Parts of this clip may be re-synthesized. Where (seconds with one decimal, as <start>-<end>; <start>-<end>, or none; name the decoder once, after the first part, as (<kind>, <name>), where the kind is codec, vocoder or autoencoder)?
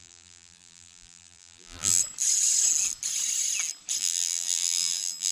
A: 0.0-2.0 (vocoder, BigVGAN v2); 4.0-5.3